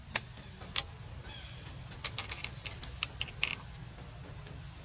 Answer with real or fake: real